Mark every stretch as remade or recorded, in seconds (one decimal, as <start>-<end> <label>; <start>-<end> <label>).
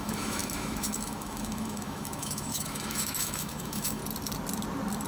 0.0-4.0 remade; 4.0-5.1 recorded